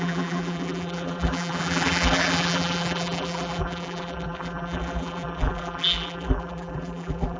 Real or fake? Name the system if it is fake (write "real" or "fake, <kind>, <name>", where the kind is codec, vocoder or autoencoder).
fake, vocoder, BigVGAN v2